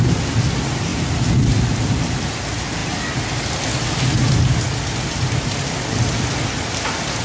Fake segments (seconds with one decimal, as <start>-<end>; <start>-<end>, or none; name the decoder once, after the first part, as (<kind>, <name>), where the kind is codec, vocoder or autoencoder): none